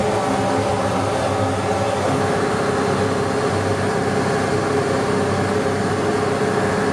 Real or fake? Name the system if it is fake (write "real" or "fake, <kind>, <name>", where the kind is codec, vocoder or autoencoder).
real